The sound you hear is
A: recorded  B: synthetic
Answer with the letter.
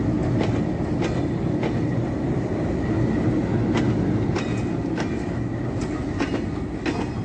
A